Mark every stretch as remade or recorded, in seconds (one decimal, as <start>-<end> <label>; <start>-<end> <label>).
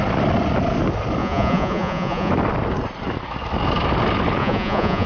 0.0-1.2 recorded; 1.2-2.3 remade; 2.3-4.4 recorded; 4.4-5.1 remade